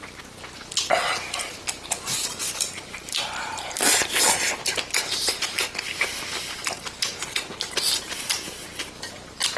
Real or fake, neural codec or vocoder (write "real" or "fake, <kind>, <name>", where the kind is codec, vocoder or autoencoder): real